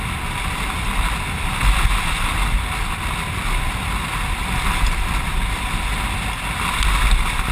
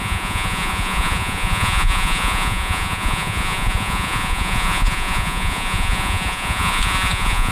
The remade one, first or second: second